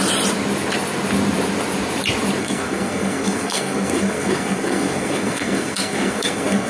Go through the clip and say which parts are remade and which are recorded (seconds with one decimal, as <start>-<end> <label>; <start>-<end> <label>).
0.0-2.4 recorded; 2.4-6.7 remade